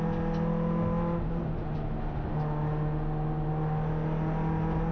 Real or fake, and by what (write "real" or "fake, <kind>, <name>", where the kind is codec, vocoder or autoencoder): real